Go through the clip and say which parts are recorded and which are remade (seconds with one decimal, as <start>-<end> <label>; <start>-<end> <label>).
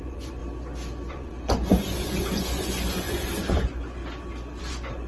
0.0-0.4 remade; 0.4-1.1 recorded; 1.1-4.0 remade; 4.0-4.6 recorded; 4.6-5.1 remade